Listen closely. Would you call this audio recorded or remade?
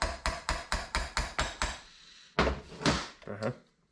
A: recorded